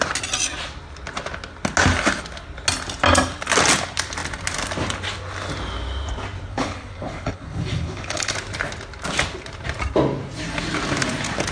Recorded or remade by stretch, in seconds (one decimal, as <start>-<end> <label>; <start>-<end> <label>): 0.0-6.5 recorded; 6.5-8.3 remade; 8.3-11.5 recorded